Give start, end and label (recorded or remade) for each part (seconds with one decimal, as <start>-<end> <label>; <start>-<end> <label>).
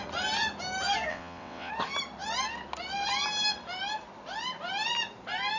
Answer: 0.0-1.1 recorded; 1.1-1.7 remade; 1.7-5.6 recorded